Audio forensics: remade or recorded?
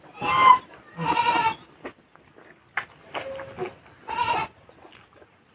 recorded